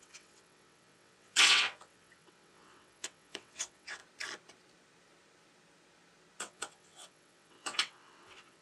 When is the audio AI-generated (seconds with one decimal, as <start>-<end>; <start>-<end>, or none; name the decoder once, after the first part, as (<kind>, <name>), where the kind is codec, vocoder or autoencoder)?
0.0-4.0 (vocoder, WaveNeXt); 6.4-8.6